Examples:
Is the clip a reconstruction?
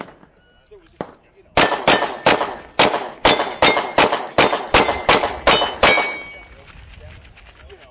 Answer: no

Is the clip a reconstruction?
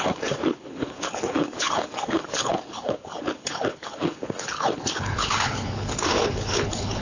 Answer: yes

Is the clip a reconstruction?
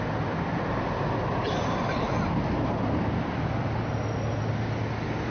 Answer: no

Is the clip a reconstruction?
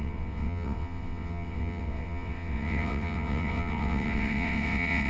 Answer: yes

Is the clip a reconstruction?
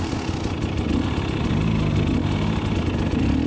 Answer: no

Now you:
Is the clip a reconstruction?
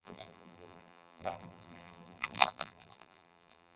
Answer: yes